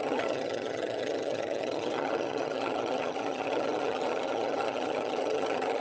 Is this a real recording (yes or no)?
no